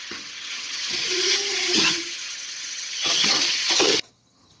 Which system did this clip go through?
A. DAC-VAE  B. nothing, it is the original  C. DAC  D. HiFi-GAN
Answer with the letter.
D